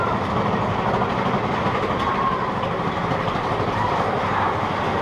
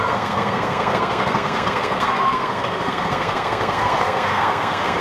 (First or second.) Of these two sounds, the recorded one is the first